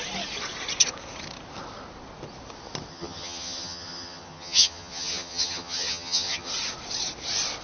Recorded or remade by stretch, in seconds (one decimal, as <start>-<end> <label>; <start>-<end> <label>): 0.0-2.9 recorded; 2.9-6.5 remade; 6.5-7.6 recorded